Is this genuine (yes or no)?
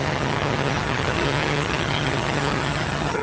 no